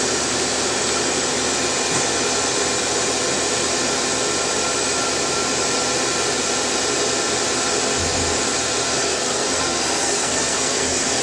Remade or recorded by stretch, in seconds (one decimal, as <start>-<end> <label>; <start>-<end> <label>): 0.0-9.0 recorded; 9.0-11.2 remade

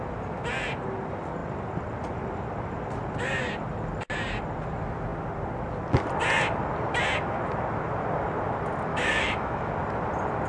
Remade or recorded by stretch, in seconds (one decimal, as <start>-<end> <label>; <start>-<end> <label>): 0.0-8.9 recorded; 8.9-9.7 remade; 9.7-10.5 recorded

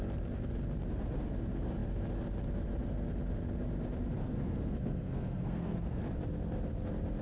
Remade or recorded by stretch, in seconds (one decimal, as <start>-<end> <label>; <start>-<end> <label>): 0.0-4.2 recorded; 4.2-6.0 remade; 6.0-7.2 recorded

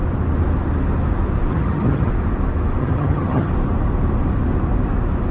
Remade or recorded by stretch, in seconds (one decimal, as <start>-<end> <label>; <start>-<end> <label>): 0.0-1.5 recorded; 1.5-2.1 remade; 2.1-2.8 recorded; 2.8-3.5 remade; 3.5-5.3 recorded